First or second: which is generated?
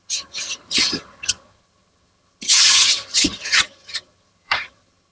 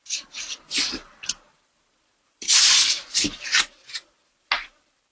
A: first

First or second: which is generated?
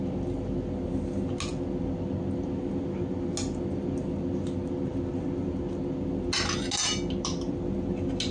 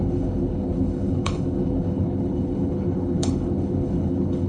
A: second